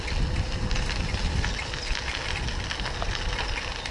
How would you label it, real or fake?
real